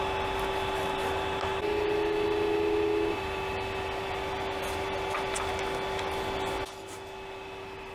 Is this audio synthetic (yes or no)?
no